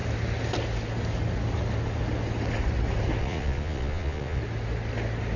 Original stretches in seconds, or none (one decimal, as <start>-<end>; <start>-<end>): 0.0-3.2; 4.4-5.4